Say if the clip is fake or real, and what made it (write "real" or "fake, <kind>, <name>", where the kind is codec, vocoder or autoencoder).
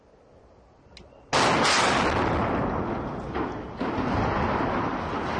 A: real